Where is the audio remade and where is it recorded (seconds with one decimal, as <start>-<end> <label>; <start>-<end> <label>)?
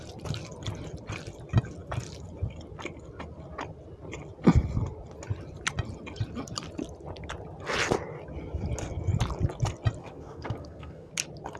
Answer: 0.0-10.0 recorded; 10.0-11.1 remade; 11.1-11.6 recorded